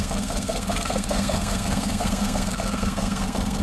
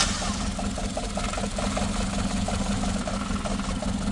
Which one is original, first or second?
second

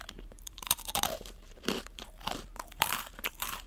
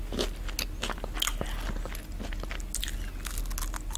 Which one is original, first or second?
second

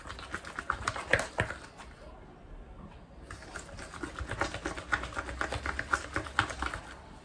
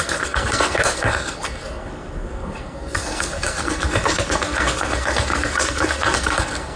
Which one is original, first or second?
first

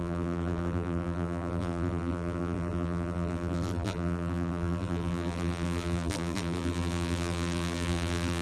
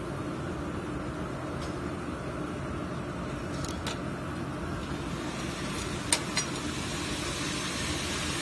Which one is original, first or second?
second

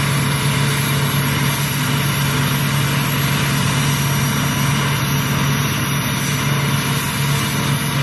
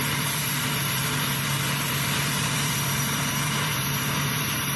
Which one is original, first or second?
first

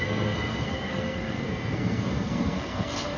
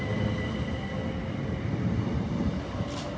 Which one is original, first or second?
second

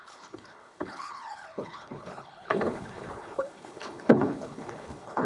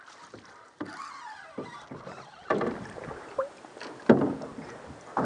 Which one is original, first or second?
second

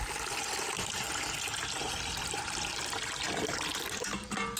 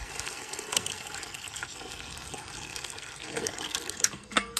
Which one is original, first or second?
first